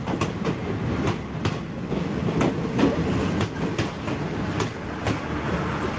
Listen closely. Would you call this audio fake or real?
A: real